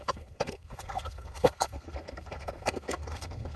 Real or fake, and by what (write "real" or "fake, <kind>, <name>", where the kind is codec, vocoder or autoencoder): fake, codec, SNAC